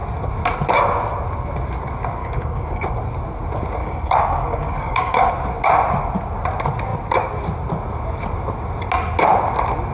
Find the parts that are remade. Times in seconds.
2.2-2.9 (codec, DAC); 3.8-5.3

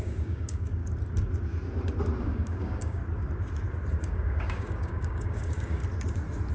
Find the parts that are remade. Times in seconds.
0.0-0.8 (codec, DAC); 2.2-3.0; 3.9-5.8

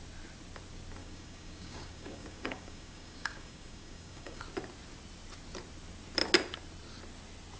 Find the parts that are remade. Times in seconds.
1.0-4.4 (codec, DAC)

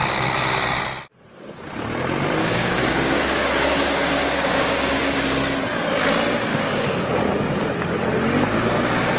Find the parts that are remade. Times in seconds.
2.4-5.2 (codec, DAC); 6.5-7.1

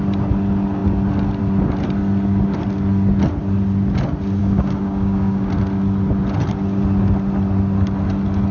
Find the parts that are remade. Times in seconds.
4.4-5.5 (codec, DAC)

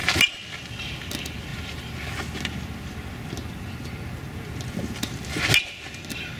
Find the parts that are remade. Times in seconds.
none

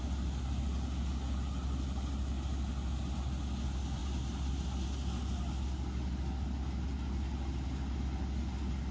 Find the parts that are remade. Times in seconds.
none

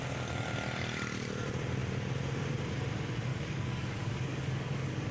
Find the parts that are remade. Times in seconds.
3.3-5.1 (codec, DAC)